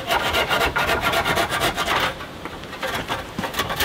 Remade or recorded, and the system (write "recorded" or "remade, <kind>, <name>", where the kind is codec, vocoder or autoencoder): remade, vocoder, BigVGAN v2